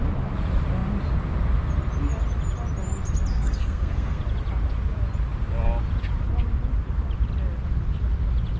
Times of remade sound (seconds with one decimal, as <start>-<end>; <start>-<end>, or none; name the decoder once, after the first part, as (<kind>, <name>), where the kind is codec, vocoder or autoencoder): 3.3-4.2 (codec, SNAC)